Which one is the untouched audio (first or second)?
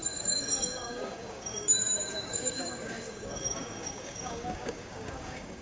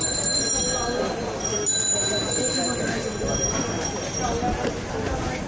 second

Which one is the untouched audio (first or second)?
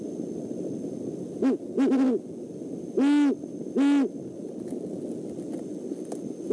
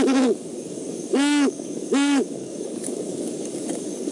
first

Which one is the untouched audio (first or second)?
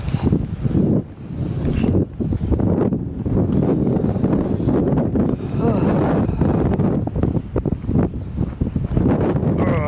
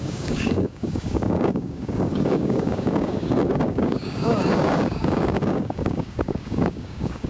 first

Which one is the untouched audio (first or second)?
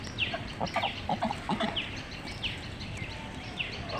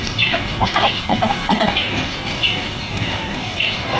first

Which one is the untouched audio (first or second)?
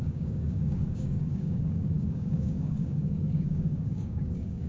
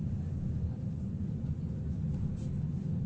second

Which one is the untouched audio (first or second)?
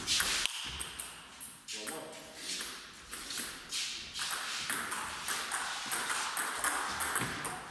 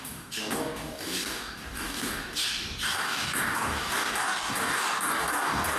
first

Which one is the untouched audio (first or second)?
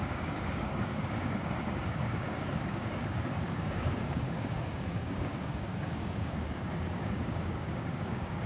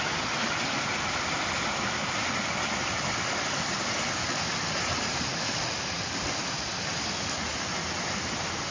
second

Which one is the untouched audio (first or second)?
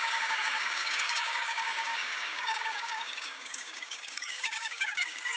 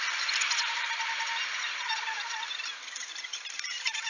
second